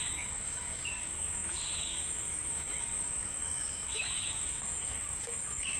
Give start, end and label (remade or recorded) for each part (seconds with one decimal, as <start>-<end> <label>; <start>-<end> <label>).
0.0-5.8 remade